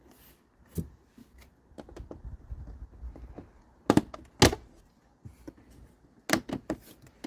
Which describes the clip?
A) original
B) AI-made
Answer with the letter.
A